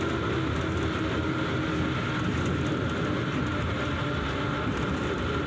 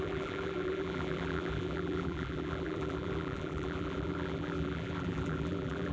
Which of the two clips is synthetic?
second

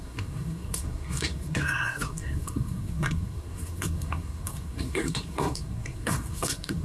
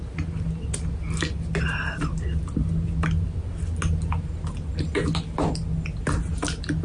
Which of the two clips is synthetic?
first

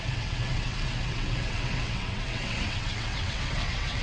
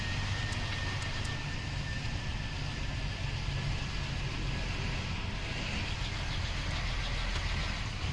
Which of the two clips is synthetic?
first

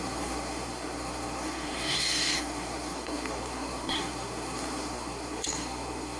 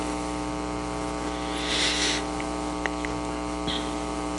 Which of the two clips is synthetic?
first